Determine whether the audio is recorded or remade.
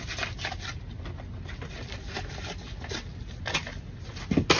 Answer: recorded